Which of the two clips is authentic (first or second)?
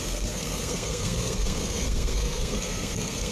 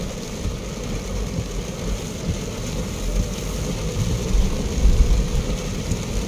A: second